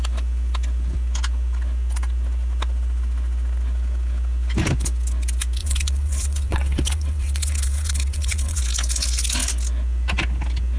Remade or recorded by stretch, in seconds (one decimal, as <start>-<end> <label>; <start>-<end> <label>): 0.0-5.6 recorded; 5.6-8.6 remade; 8.6-10.8 recorded